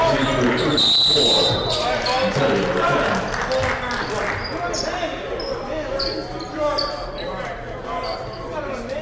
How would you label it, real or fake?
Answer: real